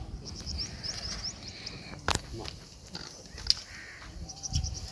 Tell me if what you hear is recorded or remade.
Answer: recorded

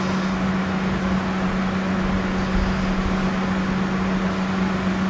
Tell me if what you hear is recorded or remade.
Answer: recorded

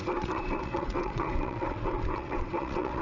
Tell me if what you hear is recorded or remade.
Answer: remade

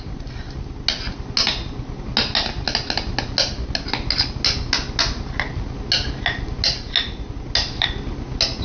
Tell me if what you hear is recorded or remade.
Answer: recorded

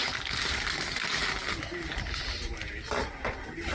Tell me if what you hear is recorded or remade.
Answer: recorded